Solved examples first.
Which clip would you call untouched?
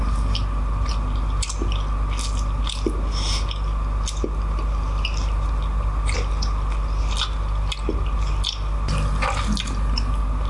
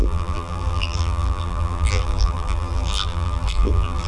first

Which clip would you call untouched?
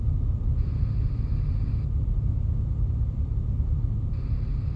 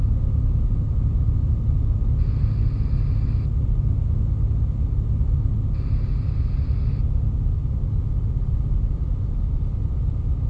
second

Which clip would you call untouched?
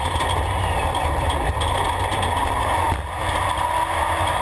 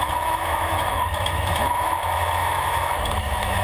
first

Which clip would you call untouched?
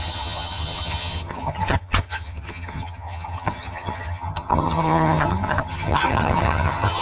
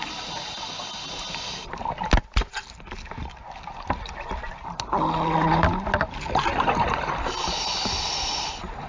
second